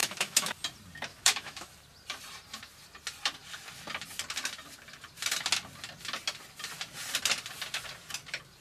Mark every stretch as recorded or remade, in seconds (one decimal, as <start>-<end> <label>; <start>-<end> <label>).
0.0-0.5 remade; 0.5-1.1 recorded; 1.1-1.7 remade; 1.7-8.6 recorded